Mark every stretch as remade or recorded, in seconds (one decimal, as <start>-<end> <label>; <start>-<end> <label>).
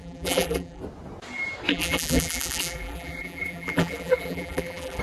0.0-0.8 remade; 0.8-1.7 recorded; 1.7-5.0 remade